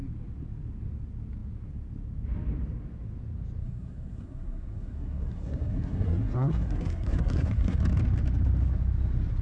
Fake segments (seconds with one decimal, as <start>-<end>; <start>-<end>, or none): 3.6-7.8